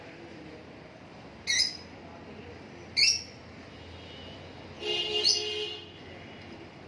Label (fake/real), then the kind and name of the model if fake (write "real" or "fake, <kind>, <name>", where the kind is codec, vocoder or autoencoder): real